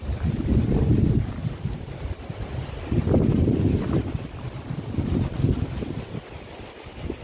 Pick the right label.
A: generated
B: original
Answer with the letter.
B